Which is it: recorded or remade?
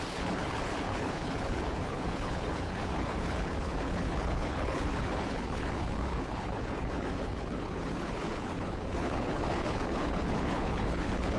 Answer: remade